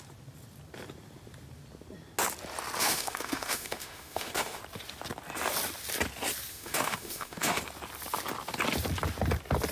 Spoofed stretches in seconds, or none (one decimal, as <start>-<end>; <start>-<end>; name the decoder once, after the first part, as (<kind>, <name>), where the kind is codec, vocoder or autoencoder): 2.8-4.6 (autoencoder, DAC-VAE); 6.5-7.6